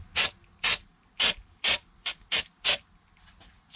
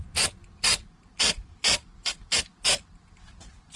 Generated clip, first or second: second